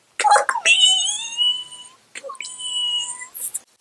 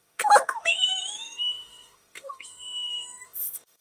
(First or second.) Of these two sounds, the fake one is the second